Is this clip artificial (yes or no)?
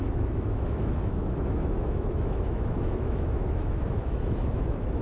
yes